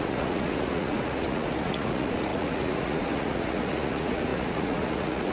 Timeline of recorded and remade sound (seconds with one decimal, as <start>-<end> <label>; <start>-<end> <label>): 0.0-5.3 remade